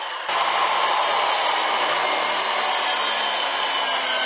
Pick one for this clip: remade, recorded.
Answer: recorded